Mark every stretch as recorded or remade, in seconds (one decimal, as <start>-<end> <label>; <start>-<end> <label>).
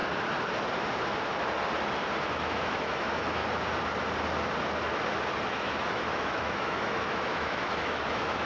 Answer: 0.0-2.2 recorded; 2.2-3.4 remade; 3.4-5.5 recorded; 5.5-8.5 remade